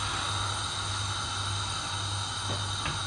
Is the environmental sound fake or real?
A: real